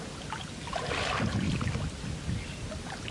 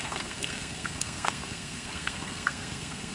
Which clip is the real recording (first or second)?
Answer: first